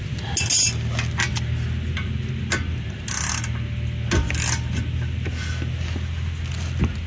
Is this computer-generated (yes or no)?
no